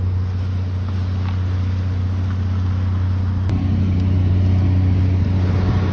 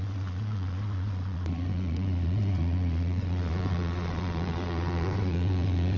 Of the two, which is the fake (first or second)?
second